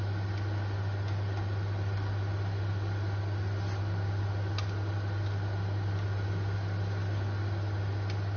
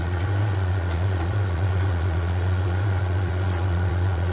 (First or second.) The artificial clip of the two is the second